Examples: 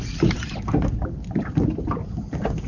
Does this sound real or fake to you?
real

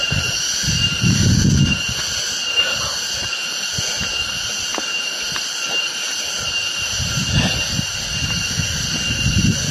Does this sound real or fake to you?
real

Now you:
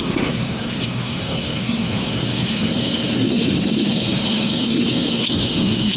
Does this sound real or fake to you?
fake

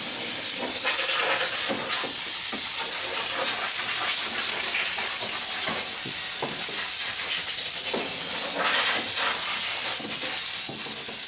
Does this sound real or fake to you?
real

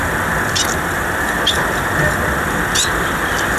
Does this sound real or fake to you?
real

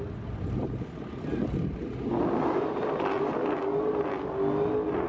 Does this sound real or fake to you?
real